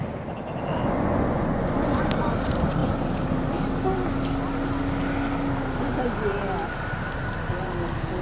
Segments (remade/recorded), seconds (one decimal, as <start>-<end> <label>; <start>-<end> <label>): 0.0-0.8 recorded; 0.8-2.1 remade; 2.1-8.2 recorded